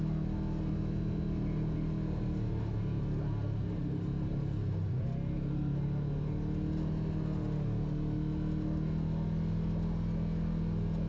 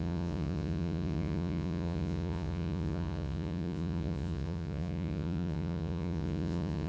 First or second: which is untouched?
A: first